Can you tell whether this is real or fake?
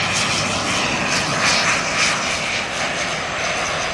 real